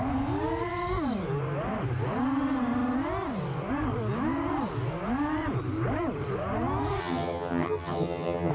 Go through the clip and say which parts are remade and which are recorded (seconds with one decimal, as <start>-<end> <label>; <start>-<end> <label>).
0.0-7.0 recorded; 7.0-8.5 remade